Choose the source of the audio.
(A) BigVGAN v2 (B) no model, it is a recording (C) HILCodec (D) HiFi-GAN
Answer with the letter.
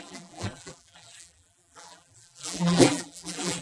A